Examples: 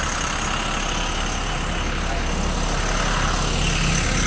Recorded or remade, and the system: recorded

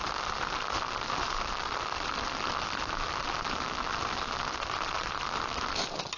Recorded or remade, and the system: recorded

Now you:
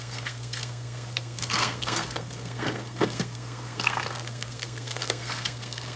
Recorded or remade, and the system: remade, codec, SNAC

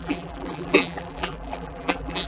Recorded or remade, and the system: remade, vocoder, BigVGAN v2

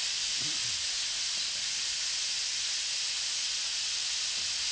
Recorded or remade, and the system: recorded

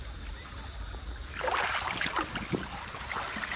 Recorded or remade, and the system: recorded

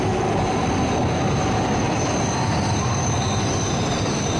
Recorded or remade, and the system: recorded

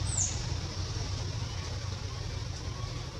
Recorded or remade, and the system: recorded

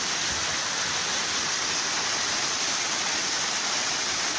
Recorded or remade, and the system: recorded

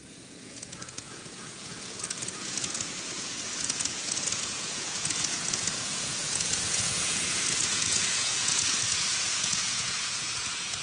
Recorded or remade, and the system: remade, vocoder, Vocos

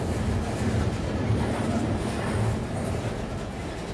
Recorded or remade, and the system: recorded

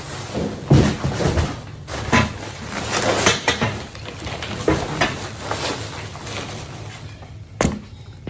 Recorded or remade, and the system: recorded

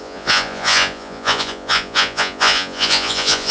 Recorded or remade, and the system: remade, vocoder, Vocos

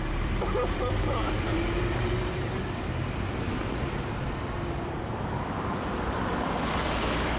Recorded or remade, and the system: remade, vocoder, BigVGAN v2